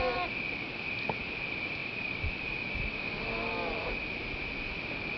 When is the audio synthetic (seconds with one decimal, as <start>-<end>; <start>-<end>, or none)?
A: none